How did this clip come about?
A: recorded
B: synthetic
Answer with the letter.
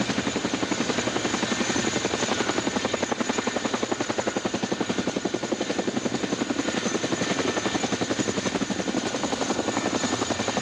A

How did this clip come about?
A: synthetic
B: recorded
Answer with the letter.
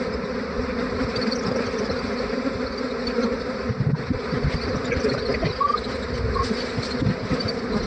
B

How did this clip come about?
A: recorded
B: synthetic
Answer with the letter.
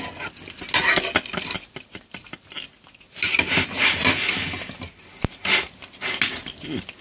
A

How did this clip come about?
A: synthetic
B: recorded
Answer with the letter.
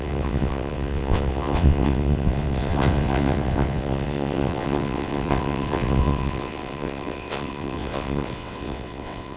A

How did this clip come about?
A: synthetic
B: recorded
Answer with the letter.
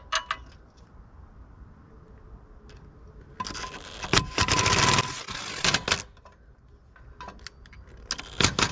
B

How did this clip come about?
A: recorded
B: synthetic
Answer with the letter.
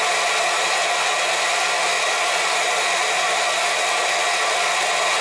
A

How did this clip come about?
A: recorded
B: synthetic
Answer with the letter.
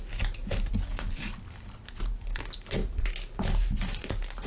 A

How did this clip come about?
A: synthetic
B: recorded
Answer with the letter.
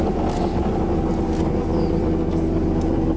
B